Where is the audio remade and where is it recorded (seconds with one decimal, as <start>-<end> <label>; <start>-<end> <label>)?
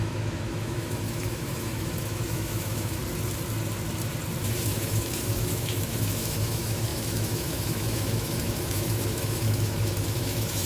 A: 0.0-3.0 remade; 3.0-4.6 recorded; 4.6-10.7 remade